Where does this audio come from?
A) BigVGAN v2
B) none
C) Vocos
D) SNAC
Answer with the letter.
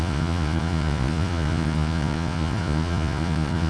C